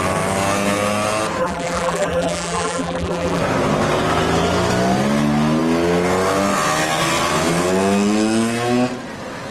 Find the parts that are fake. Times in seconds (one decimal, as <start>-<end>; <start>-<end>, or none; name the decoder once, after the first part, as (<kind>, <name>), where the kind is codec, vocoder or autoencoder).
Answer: 1.4-3.4 (vocoder, BigVGAN v2)